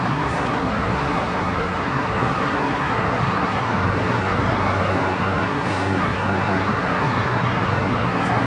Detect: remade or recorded remade